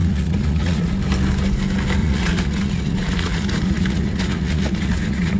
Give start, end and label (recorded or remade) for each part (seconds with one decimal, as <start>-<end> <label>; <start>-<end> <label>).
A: 0.0-0.9 remade; 0.9-2.0 recorded; 2.0-5.4 remade